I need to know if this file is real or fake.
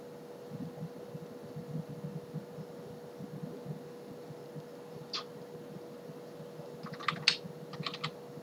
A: real